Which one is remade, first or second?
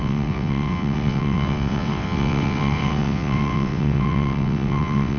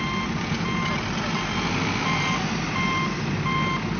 first